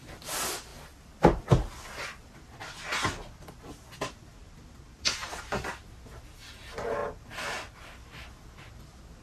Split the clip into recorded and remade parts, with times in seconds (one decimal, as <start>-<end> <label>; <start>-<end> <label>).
0.0-9.2 recorded